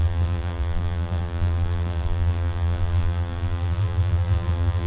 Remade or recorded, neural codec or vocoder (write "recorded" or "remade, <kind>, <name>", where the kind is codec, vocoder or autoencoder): remade, vocoder, BigVGAN v2